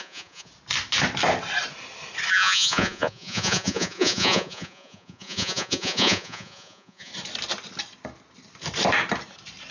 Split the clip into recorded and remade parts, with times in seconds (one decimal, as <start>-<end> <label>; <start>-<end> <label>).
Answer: 0.0-0.5 remade; 0.5-2.3 recorded; 2.3-7.1 remade; 7.1-9.7 recorded